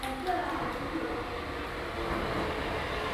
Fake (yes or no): no